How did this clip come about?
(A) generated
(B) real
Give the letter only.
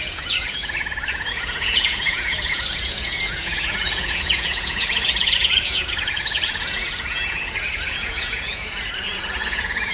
A